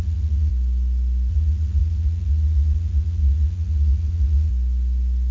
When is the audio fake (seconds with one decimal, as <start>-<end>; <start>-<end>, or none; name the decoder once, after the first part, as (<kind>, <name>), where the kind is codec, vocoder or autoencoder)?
0.0-0.5 (vocoder, Vocos); 1.3-4.5